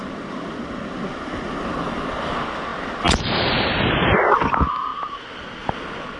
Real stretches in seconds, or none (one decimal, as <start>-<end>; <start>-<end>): 0.0-6.2